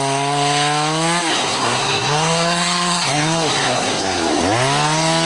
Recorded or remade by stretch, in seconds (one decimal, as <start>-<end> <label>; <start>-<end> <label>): 0.0-1.3 recorded; 1.3-4.4 remade; 4.4-5.2 recorded

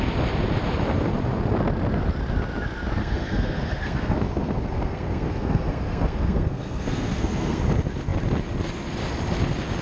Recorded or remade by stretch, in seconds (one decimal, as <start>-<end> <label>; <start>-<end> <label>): 0.0-3.0 recorded; 3.0-7.6 remade; 7.6-9.8 recorded

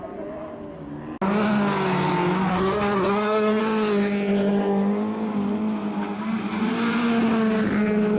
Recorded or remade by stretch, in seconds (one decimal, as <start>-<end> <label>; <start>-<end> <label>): 0.0-2.5 recorded; 2.5-3.6 remade; 3.6-8.2 recorded

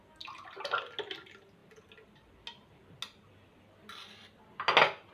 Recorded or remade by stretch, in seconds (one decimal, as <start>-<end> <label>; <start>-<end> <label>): 0.0-5.1 recorded

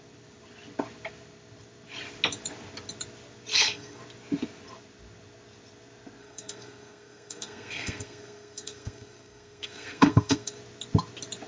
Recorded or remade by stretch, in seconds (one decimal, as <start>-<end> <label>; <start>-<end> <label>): 0.0-3.5 recorded; 3.5-4.0 remade; 4.0-6.2 recorded; 6.2-10.6 remade; 10.6-11.5 recorded

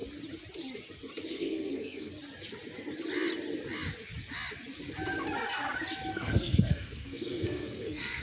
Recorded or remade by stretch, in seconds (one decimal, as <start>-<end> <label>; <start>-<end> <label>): 0.0-1.3 recorded; 1.3-2.1 remade; 2.1-6.1 recorded; 6.1-8.2 remade

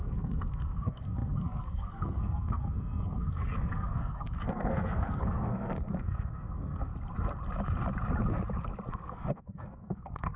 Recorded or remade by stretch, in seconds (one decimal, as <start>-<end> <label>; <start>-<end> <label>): 0.0-6.9 remade; 6.9-8.9 recorded; 8.9-10.4 remade

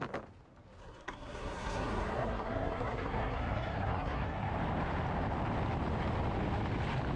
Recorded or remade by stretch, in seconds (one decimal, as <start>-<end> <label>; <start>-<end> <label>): 0.0-0.8 recorded; 0.8-4.5 remade; 4.5-7.2 recorded